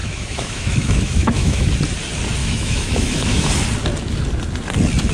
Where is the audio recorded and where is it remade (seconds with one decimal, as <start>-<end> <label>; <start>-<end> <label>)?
0.0-1.7 remade; 1.7-2.4 recorded; 2.4-3.5 remade; 3.5-5.1 recorded